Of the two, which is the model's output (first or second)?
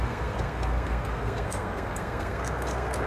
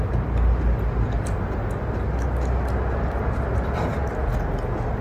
first